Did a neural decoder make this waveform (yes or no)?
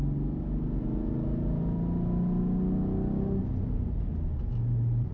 no